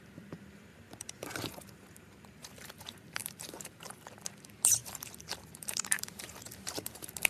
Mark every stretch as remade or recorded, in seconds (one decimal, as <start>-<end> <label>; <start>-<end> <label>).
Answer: 0.0-7.3 remade